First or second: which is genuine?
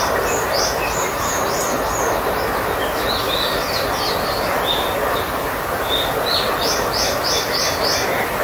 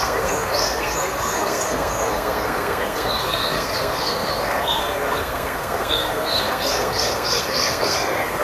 first